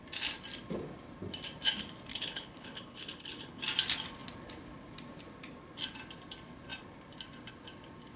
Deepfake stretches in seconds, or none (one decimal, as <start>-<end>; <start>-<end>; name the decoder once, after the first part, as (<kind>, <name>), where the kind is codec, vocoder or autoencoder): 2.1-3.6 (codec, HILCodec)